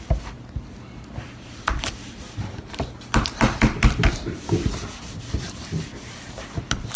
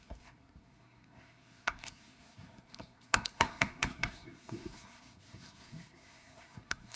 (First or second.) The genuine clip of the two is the first